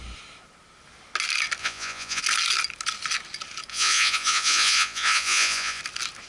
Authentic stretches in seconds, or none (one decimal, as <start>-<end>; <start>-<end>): 0.0-1.6; 2.2-3.7; 5.8-6.3